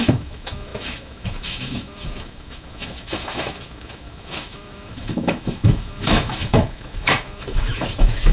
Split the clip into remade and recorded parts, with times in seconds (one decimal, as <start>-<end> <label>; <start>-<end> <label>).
0.0-8.3 remade